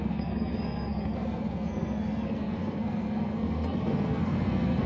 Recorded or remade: remade